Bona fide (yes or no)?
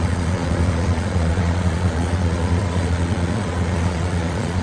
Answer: no